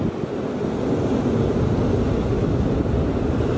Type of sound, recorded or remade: recorded